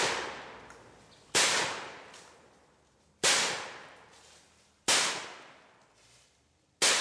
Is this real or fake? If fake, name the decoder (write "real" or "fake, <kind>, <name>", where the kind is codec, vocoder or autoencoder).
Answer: real